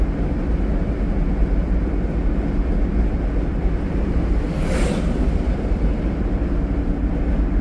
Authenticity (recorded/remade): recorded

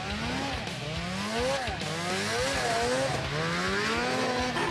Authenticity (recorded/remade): recorded